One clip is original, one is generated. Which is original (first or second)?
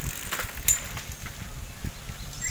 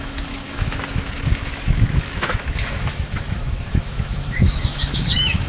first